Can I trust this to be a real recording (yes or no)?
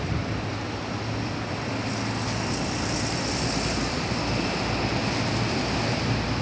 yes